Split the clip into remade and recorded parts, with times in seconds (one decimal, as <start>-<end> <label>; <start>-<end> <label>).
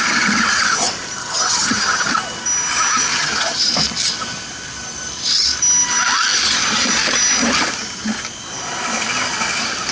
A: 0.0-1.2 recorded; 1.2-2.1 remade; 2.1-3.1 recorded; 3.1-3.7 remade; 3.7-9.9 recorded